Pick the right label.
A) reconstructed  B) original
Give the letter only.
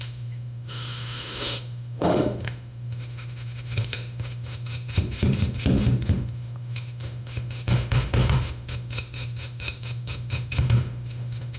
A